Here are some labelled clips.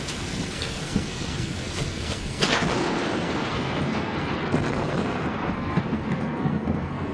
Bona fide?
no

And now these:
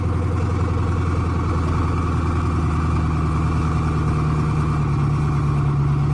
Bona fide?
yes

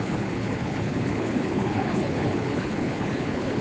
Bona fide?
no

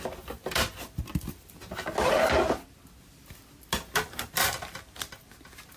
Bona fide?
yes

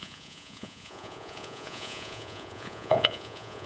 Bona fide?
no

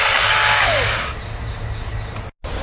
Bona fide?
yes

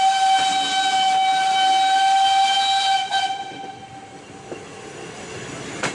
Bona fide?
yes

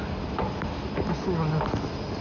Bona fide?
yes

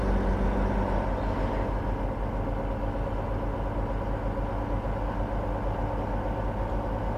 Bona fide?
yes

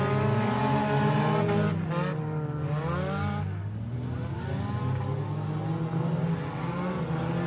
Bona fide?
yes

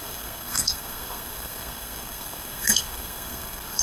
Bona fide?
no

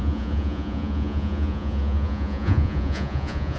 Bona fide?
no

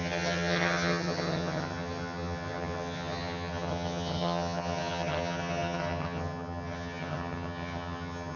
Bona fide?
no